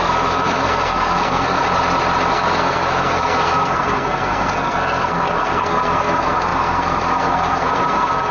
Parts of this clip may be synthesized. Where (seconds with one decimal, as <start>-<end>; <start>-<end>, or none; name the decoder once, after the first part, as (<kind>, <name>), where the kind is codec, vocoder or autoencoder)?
0.0-1.6 (codec, SNAC); 2.3-8.3